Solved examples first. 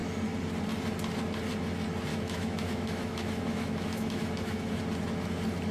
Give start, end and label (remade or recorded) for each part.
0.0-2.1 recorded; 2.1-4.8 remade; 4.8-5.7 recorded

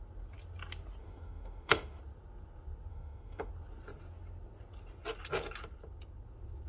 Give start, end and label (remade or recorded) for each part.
0.0-1.0 recorded; 1.0-2.0 remade; 2.0-2.9 recorded; 2.9-3.5 remade; 3.5-6.7 recorded

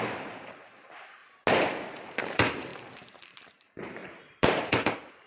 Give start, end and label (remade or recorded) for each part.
0.0-1.2 remade; 1.2-2.2 recorded; 2.2-5.3 remade

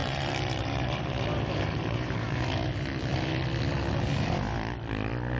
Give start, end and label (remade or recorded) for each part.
0.0-2.4 remade; 2.4-5.4 recorded